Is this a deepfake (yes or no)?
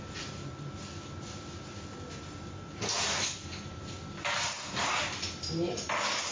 no